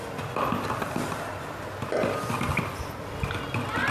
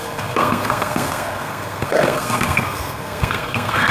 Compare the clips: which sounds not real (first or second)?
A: second